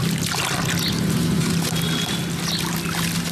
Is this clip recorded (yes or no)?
yes